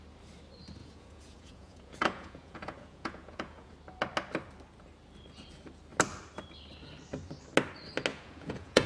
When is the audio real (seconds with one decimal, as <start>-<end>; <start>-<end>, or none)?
0.0-0.8; 3.7-8.1